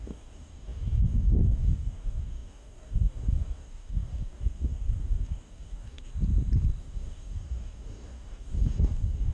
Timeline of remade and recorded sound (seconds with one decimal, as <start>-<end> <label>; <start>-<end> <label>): 0.0-6.1 remade; 6.1-6.8 recorded; 6.8-9.3 remade